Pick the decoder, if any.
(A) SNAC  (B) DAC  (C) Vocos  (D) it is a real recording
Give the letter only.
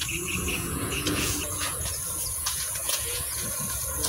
C